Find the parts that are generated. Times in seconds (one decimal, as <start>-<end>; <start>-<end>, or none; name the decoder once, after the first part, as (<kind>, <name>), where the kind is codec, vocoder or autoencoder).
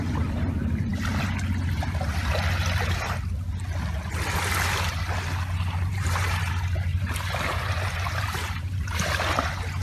5.9-6.5 (vocoder, BigVGAN v2); 6.9-9.0